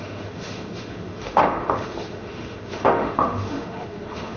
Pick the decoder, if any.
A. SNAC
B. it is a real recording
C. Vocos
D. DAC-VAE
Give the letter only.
D